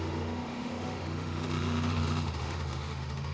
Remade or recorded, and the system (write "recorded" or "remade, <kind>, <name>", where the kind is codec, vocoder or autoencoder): remade, autoencoder, DAC-VAE